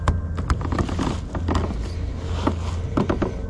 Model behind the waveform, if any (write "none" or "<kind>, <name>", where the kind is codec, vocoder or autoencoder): none